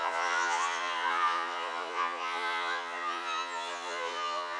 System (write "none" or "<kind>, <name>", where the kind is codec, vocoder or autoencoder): vocoder, Vocos